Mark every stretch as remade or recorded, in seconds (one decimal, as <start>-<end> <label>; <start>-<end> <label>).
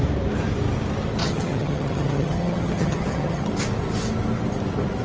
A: 0.0-1.2 recorded; 1.2-3.5 remade; 3.5-5.0 recorded